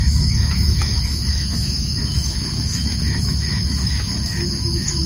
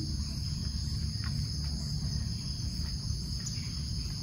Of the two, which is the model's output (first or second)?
first